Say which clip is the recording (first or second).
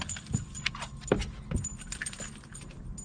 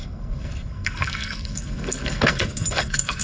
first